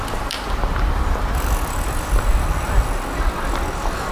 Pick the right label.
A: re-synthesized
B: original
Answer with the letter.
B